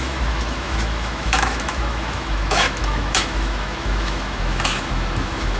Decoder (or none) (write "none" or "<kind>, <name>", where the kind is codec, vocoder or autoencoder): autoencoder, DAC-VAE